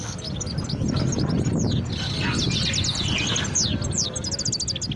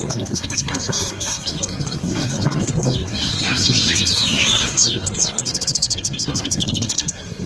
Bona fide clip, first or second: first